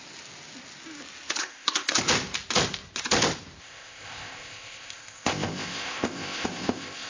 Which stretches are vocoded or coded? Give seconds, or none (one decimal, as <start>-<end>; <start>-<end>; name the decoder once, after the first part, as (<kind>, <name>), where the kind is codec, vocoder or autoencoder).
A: 1.4-2.0 (codec, ZipCodec); 3.6-7.1